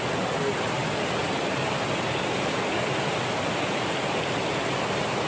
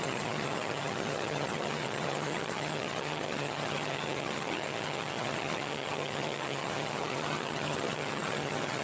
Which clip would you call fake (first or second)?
second